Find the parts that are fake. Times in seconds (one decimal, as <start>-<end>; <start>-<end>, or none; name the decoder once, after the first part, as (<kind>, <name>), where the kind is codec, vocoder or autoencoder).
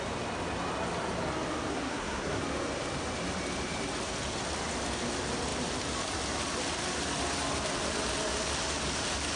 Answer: 1.7-2.4 (codec, SNAC)